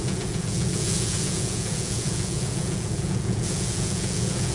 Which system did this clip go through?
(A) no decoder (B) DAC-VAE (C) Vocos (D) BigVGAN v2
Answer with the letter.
C